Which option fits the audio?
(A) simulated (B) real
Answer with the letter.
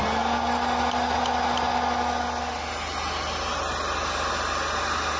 B